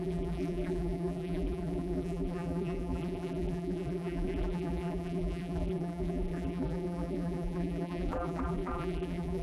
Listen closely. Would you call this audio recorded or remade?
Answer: remade